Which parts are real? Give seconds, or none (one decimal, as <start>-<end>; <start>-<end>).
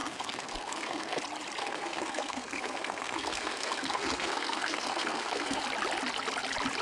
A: 1.2-1.6; 5.6-6.8